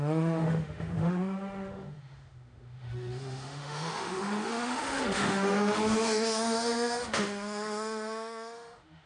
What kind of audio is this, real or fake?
fake